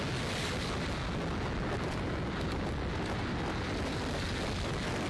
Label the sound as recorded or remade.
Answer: recorded